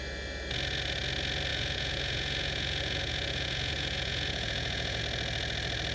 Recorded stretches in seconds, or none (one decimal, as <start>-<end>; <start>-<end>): 0.0-1.5; 5.0-5.9